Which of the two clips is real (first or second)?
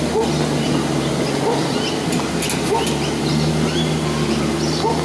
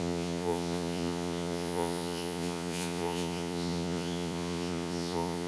first